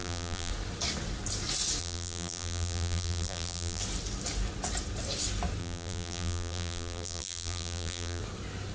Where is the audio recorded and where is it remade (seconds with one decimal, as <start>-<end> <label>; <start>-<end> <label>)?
0.0-0.5 remade; 0.5-1.8 recorded; 1.8-3.8 remade; 3.8-5.6 recorded; 5.6-8.2 remade; 8.2-8.7 recorded